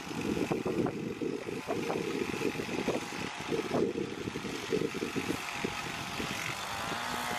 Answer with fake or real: real